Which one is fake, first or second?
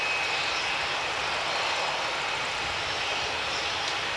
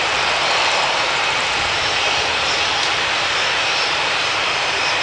second